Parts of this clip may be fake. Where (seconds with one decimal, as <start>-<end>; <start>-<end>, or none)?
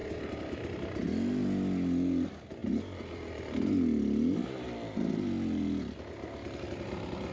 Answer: none